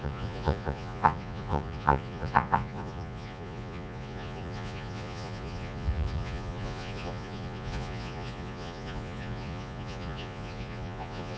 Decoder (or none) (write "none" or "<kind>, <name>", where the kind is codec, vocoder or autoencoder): vocoder, Vocos